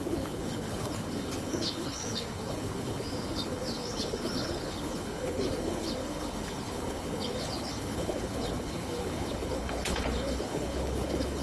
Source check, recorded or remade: remade